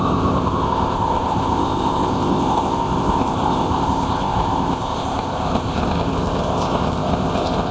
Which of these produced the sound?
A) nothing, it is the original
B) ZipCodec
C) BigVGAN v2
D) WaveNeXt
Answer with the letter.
B